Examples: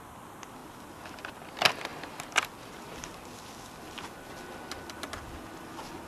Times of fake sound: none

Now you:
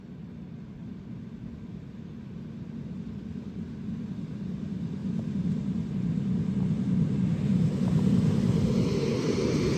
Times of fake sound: none